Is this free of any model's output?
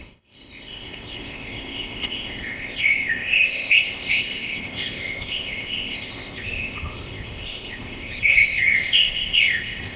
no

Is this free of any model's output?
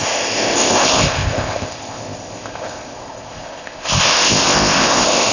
no